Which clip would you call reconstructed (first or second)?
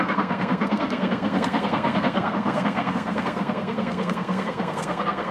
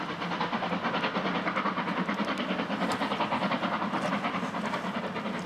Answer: first